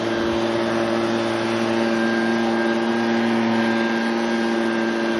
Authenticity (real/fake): real